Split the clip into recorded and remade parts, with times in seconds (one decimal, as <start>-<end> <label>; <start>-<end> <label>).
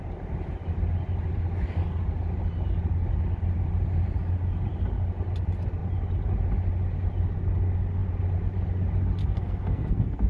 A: 0.0-9.2 recorded; 9.2-10.3 remade